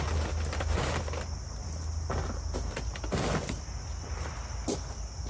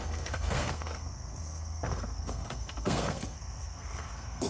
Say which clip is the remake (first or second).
second